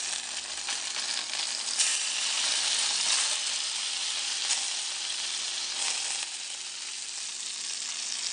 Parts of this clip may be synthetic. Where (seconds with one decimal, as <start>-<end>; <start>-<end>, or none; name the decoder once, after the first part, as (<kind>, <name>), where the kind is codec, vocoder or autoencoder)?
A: none